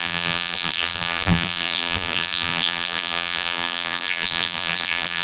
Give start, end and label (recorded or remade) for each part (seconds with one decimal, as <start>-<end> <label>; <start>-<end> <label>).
0.0-5.2 remade